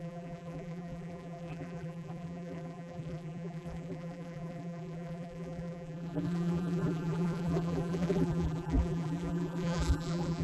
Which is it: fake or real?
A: fake